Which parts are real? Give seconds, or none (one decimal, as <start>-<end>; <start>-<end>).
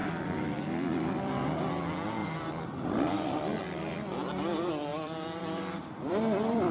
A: 1.7-2.2; 3.6-4.9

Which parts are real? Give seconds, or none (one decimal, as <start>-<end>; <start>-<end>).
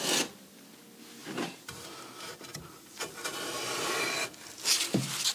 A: 0.0-1.2; 1.9-5.3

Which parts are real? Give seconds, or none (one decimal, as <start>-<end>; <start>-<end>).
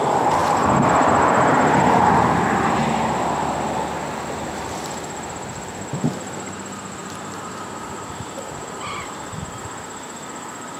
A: 0.0-0.4; 2.1-7.0; 9.6-10.8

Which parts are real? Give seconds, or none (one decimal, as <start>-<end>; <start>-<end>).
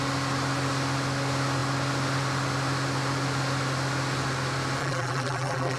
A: 0.0-4.8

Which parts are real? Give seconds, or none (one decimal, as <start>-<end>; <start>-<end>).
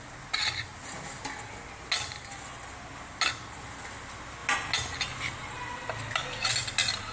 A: 0.0-7.1